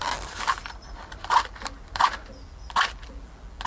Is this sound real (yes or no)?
yes